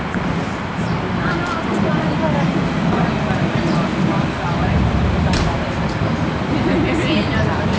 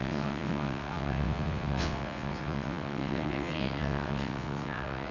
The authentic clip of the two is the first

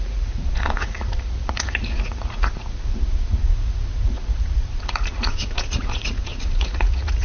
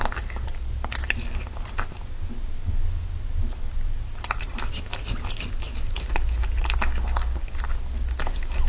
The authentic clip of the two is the second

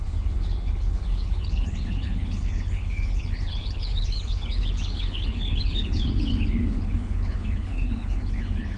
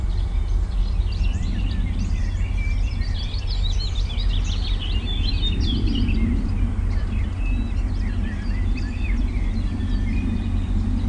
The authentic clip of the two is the second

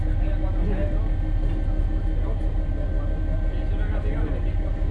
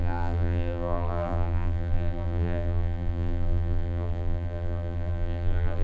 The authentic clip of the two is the first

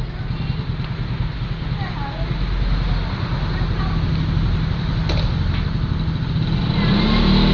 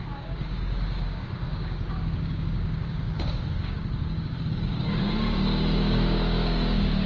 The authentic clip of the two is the first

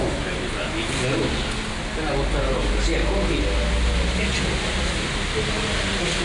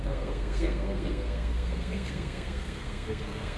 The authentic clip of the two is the first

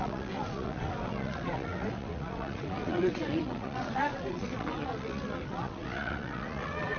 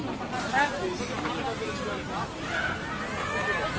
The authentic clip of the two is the second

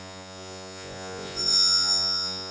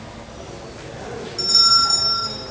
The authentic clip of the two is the second